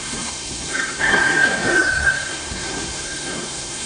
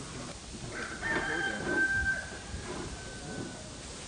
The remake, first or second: first